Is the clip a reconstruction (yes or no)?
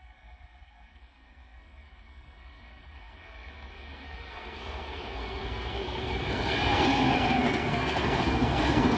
yes